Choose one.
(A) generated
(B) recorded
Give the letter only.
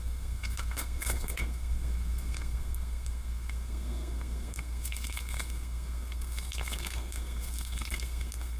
A